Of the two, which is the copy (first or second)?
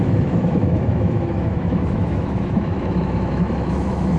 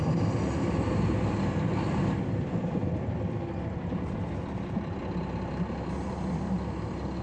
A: first